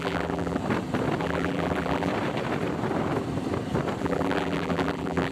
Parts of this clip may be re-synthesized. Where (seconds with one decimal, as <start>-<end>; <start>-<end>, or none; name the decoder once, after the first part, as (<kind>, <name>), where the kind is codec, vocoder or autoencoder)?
0.0-0.6 (vocoder, BigVGAN v2); 1.2-2.1; 4.0-5.3